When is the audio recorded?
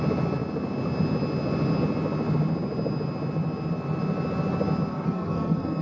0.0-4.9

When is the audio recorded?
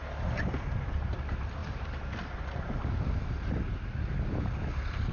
0.0-5.1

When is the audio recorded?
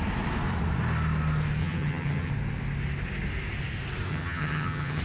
0.0-1.6; 2.3-4.1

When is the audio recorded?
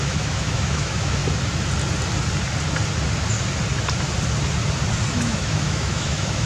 1.2-5.1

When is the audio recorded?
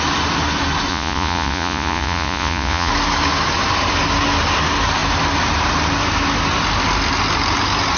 0.0-0.9; 2.9-8.0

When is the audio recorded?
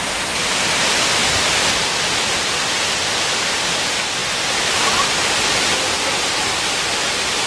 0.0-1.2; 1.9-7.5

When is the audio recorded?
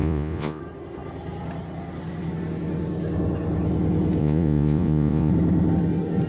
0.6-4.2; 5.3-6.3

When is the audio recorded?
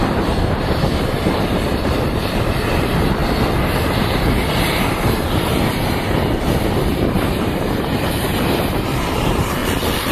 3.2-4.1; 9.6-10.1